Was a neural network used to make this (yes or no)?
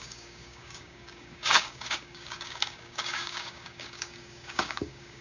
yes